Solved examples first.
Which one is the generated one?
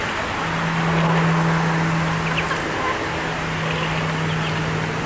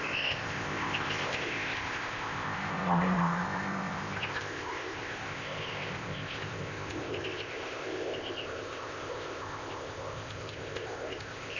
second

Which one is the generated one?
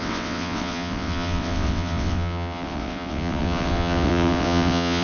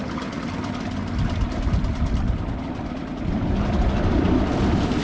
first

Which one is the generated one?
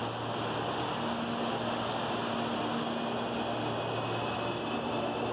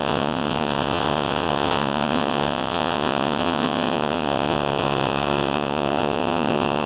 second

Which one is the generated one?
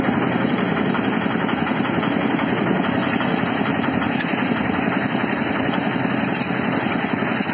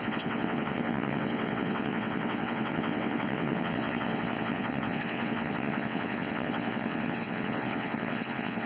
second